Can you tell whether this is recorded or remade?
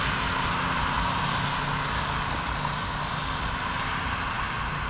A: recorded